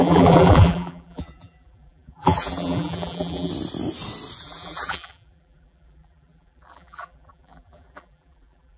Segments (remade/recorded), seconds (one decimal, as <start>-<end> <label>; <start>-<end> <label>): 0.0-3.5 remade; 3.5-4.4 recorded; 4.4-8.8 remade